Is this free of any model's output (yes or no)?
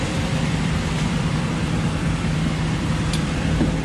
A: no